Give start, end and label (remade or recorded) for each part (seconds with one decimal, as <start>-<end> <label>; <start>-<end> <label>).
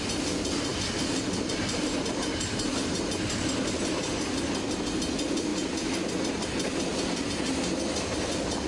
0.0-8.7 recorded